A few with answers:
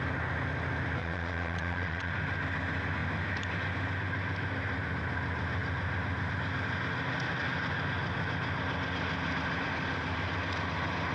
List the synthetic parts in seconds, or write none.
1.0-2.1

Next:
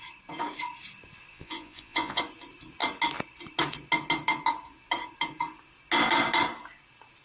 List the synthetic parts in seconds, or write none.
1.3-2.2

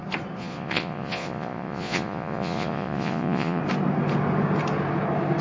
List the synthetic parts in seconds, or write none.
0.4-3.6

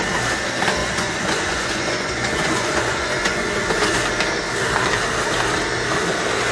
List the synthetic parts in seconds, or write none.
0.8-3.9

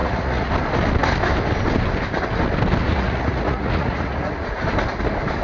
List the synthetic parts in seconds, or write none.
0.0-0.5; 2.8-4.6

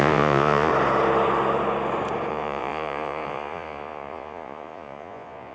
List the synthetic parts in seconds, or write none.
0.0-0.7; 2.3-5.5

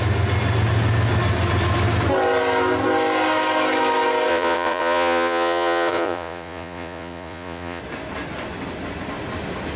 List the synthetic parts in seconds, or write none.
4.3-7.8

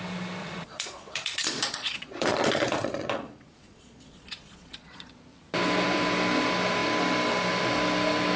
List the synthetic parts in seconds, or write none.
0.4-5.1